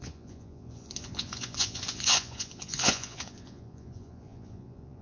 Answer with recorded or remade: remade